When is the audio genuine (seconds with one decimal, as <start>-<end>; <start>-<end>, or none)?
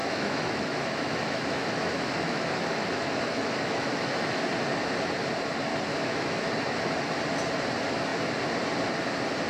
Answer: 4.5-5.9; 6.5-9.5